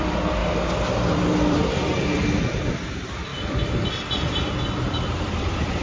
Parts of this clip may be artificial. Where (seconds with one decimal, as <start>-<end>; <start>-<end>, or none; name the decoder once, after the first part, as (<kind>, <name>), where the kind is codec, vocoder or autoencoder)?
0.0-0.4 (vocoder, BigVGAN v2); 1.1-1.9; 2.6-5.8